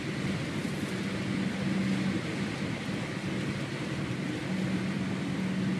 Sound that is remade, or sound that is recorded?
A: recorded